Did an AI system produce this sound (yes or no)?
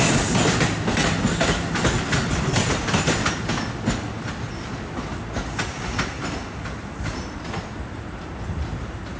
no